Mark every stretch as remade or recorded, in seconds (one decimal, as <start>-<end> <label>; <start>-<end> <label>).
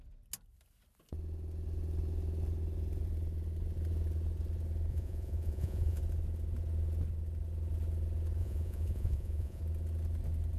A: 0.0-4.9 recorded; 4.9-6.0 remade; 6.0-8.4 recorded; 8.4-9.6 remade; 9.6-10.6 recorded